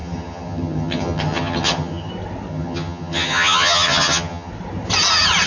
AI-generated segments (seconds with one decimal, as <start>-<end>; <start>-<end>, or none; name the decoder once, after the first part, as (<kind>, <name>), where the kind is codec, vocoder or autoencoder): 0.0-2.1 (vocoder, HiFi-GAN); 2.5-4.5

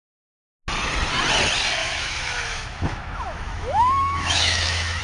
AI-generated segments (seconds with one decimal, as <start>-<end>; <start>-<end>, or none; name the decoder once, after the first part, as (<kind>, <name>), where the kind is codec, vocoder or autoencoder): 1.8-5.0 (autoencoder, DAC-VAE)

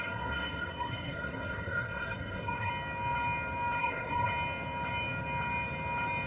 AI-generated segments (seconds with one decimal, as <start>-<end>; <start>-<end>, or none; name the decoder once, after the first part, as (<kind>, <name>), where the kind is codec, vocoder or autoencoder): 0.0-2.7 (codec, SNAC); 3.8-4.3

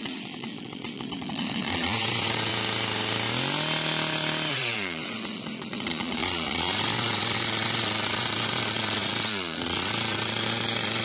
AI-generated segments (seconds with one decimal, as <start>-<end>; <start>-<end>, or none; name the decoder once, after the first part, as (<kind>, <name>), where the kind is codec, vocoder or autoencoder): 0.0-2.5 (vocoder, Vocos); 4.5-11.0

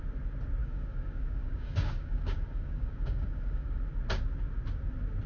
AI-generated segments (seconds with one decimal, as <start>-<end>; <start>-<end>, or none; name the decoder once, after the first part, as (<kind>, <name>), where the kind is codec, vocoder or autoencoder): 0.6-3.8 (codec, DAC)

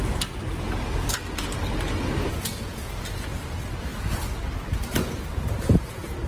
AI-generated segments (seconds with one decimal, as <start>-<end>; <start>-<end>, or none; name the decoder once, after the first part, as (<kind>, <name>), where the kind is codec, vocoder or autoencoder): 2.3-2.9 (vocoder, Vocos)

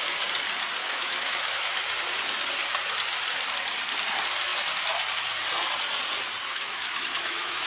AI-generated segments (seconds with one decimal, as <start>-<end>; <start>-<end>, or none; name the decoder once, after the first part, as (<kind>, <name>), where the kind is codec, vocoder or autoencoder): 0.8-1.7 (autoencoder, DAC-VAE); 6.5-7.7